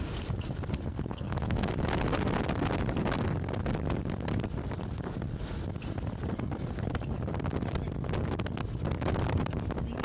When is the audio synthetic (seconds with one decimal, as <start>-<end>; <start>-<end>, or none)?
0.7-1.7